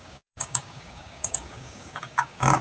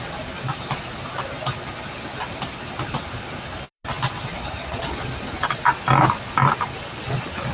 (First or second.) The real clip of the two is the second